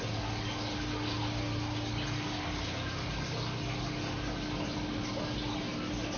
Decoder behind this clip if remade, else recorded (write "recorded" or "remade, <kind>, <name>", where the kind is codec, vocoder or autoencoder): recorded